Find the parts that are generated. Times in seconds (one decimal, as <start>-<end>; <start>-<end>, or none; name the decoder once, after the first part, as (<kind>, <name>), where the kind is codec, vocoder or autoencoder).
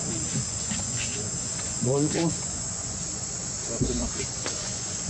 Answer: 0.5-3.6 (vocoder, Vocos); 4.0-5.1